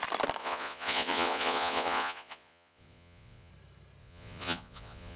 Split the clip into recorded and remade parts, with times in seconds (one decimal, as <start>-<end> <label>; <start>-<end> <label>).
0.0-0.4 recorded; 0.4-3.5 remade; 3.5-4.0 recorded; 4.0-5.2 remade

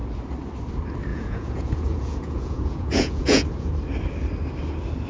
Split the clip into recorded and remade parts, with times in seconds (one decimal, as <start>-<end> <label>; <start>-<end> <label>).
0.0-1.1 recorded; 1.1-3.7 remade; 3.7-5.1 recorded